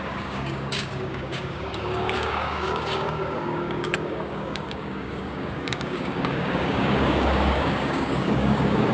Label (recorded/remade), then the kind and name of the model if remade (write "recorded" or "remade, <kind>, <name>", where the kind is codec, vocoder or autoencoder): remade, codec, DAC